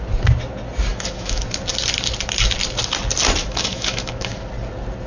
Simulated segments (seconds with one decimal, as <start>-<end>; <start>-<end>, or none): 0.9-1.4; 3.4-4.5